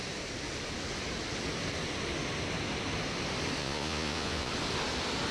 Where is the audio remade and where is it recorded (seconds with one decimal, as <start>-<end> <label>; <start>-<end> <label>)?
0.0-3.6 recorded; 3.6-4.5 remade; 4.5-5.3 recorded